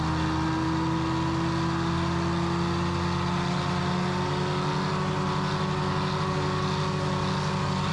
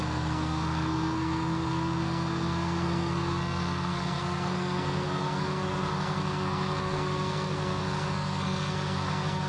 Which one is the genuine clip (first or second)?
first